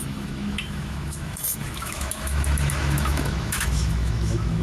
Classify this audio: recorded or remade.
remade